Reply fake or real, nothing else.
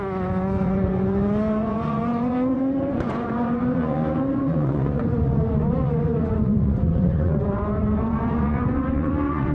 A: fake